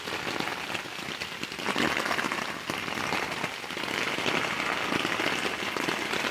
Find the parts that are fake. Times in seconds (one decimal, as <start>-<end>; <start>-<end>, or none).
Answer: none